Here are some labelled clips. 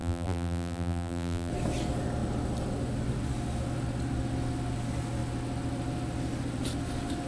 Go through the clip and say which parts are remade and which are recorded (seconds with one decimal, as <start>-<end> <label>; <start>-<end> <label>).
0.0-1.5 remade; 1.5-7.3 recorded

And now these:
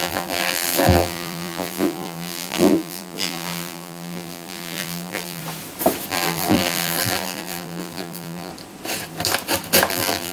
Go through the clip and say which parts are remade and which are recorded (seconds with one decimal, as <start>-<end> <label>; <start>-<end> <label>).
0.0-5.4 remade; 5.4-6.1 recorded; 6.1-8.5 remade; 8.5-9.9 recorded; 9.9-10.3 remade

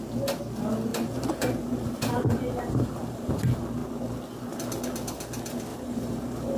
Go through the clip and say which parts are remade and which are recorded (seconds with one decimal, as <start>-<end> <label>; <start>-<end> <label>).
0.0-0.9 recorded; 0.9-3.3 remade; 3.3-5.7 recorded; 5.7-6.6 remade

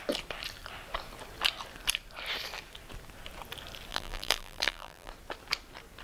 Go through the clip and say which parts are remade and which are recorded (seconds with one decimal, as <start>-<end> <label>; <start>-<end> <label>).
0.0-3.9 recorded; 3.9-5.1 remade; 5.1-6.0 recorded

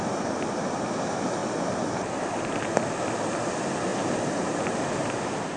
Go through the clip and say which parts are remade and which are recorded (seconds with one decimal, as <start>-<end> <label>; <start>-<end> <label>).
0.0-1.4 recorded; 1.4-2.6 remade; 2.6-3.9 recorded; 3.9-5.0 remade; 5.0-5.6 recorded

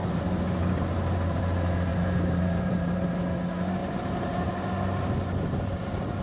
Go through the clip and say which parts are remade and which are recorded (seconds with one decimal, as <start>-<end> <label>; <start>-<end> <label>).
0.0-1.4 remade; 1.4-1.9 recorded; 1.9-3.2 remade; 3.2-3.8 recorded; 3.8-6.2 remade